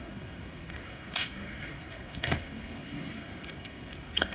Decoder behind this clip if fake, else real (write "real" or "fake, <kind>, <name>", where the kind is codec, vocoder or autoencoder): fake, codec, SNAC